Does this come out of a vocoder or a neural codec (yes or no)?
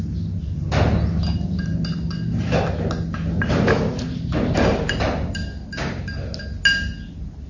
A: no